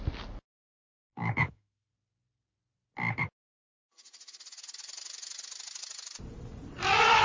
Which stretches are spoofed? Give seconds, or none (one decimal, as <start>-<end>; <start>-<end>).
1.1-1.9